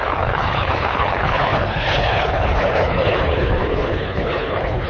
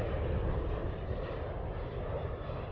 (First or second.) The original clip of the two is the second